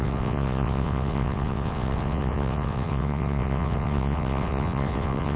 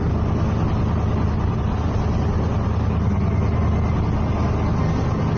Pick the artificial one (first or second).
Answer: first